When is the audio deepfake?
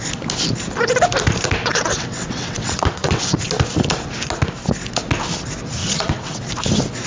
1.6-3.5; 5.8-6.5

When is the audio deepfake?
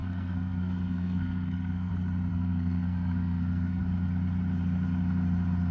0.0-1.9; 2.3-3.8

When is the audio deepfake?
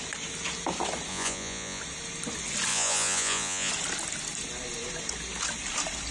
1.1-1.8; 2.7-3.7